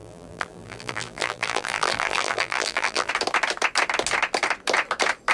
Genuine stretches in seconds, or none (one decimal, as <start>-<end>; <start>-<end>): 3.1-5.3